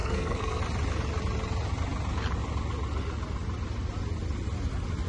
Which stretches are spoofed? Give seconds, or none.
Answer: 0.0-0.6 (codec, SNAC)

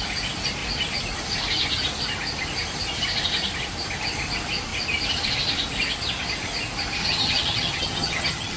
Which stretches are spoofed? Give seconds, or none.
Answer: 7.0-8.6 (vocoder, HiFi-GAN)